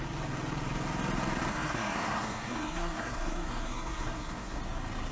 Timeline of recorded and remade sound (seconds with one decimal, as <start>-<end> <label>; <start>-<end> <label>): 0.0-1.5 recorded; 1.5-4.6 remade; 4.6-5.1 recorded